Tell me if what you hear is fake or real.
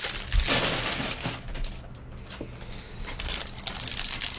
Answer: real